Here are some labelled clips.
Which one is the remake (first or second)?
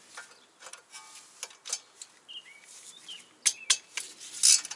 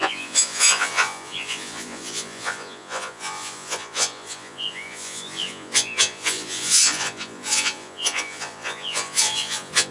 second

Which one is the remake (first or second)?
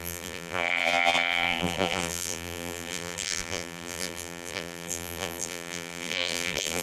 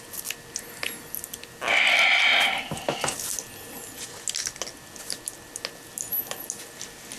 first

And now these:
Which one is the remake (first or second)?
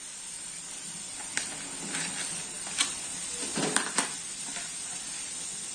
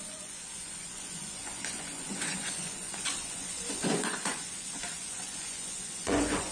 second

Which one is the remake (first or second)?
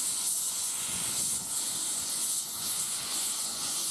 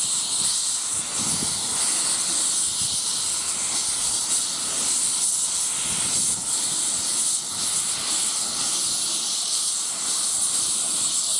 first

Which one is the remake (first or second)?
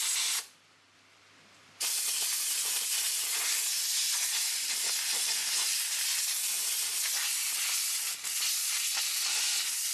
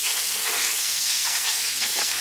second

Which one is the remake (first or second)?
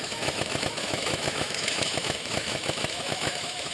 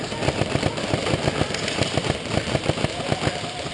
first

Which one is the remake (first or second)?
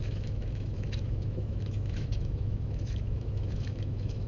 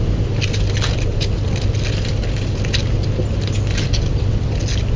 first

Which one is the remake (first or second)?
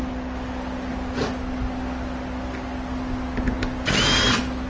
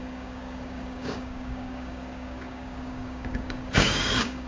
second